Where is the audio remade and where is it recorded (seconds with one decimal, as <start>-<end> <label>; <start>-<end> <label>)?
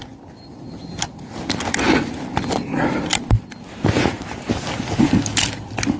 0.0-6.0 recorded